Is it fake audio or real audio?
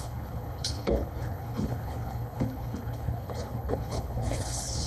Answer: fake